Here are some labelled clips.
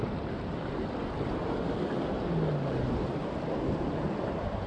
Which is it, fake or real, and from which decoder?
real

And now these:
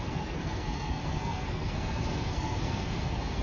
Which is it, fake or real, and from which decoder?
fake, codec, SNAC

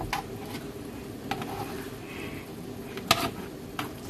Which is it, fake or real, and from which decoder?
real